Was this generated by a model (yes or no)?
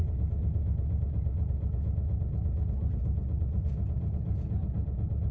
yes